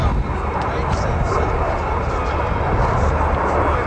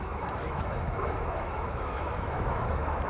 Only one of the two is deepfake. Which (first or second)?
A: second